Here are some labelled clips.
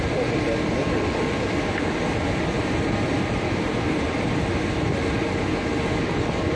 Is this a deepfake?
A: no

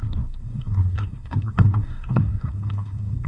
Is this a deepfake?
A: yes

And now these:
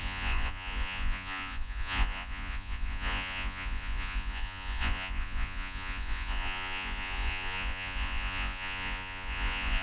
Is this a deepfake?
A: yes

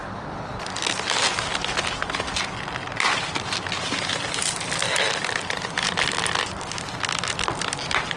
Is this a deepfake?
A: no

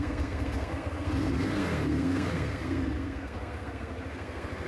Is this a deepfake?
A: yes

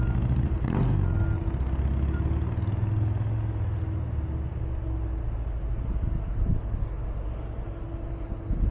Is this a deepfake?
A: no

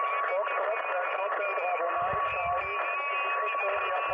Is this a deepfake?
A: no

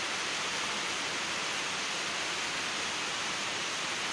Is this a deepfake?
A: no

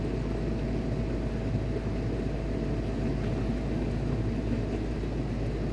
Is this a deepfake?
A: no